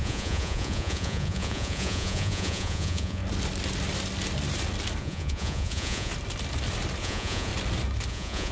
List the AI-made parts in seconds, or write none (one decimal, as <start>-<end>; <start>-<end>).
0.0-3.2; 5.0-6.1; 7.0-7.5; 8.1-8.5